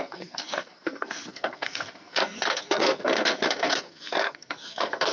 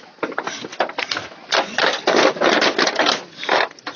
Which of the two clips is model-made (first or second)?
first